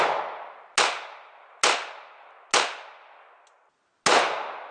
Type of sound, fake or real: real